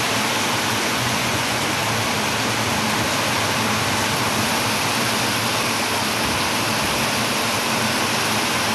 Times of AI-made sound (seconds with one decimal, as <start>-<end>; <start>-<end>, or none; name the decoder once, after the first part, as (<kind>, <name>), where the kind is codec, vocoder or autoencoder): 0.7-1.6 (vocoder, Vocos)